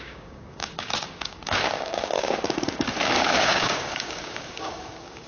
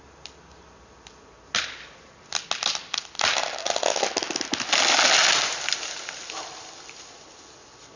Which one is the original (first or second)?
second